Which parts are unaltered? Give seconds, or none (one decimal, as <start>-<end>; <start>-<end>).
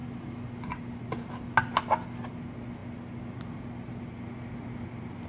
0.0-5.3